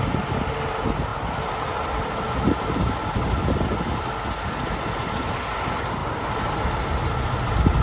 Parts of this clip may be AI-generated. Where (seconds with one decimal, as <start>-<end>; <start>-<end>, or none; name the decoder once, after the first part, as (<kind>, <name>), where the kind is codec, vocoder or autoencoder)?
6.0-6.6 (vocoder, BigVGAN v2)